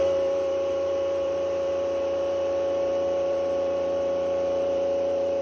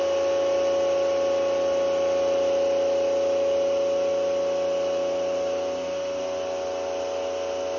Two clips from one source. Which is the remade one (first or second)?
first